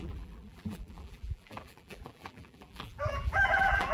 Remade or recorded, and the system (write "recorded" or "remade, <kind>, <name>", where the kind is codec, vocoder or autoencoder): remade, vocoder, BigVGAN v2